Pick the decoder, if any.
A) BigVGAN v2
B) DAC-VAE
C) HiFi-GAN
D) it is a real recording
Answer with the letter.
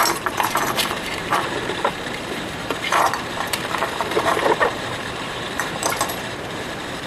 A